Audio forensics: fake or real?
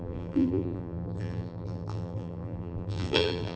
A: fake